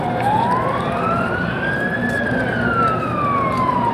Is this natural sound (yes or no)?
yes